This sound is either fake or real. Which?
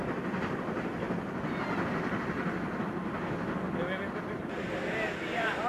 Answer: real